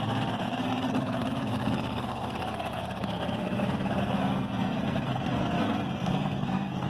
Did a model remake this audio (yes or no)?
yes